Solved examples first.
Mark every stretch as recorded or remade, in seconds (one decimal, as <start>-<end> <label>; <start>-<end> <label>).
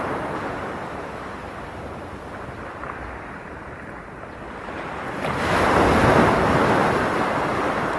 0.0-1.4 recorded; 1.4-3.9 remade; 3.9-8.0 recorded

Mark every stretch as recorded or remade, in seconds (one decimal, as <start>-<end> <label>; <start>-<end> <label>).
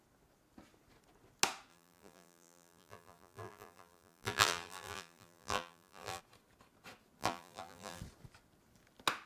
0.0-1.7 recorded; 1.7-6.2 remade; 6.2-7.2 recorded; 7.2-8.0 remade; 8.0-9.3 recorded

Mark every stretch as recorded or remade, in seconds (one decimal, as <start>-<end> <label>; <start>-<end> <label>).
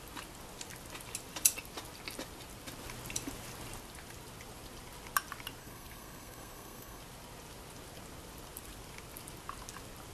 0.0-5.6 recorded; 5.6-7.0 remade; 7.0-10.1 recorded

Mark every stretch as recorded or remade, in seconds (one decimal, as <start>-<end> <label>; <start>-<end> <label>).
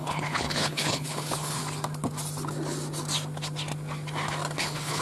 0.0-1.6 remade; 1.6-4.6 recorded; 4.6-5.0 remade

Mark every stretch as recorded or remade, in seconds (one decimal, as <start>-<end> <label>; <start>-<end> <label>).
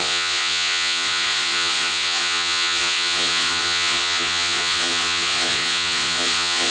0.0-6.7 remade